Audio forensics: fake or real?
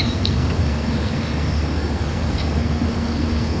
fake